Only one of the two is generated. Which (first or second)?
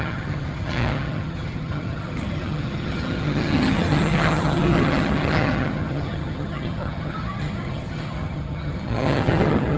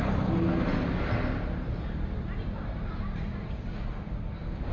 first